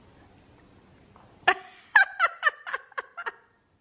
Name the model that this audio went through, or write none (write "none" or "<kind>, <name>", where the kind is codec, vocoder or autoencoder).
none